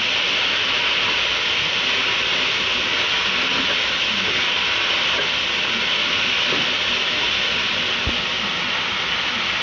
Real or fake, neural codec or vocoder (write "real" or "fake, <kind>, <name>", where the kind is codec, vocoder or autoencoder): real